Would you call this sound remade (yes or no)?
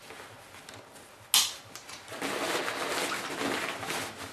no